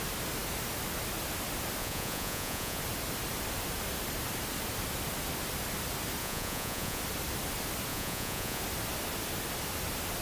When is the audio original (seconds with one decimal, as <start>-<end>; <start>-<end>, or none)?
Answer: 0.0-1.8; 2.8-6.2; 7.0-7.9; 8.6-10.2